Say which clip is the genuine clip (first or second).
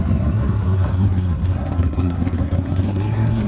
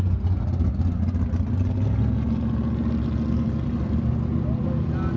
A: second